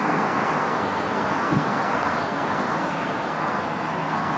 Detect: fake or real fake